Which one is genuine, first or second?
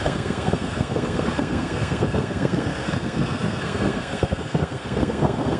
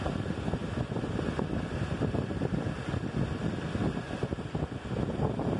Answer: second